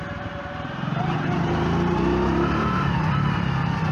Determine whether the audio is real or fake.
real